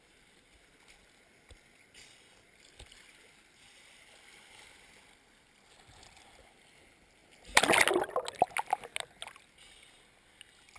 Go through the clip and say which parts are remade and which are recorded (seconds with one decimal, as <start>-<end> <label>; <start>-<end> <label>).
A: 0.0-10.8 recorded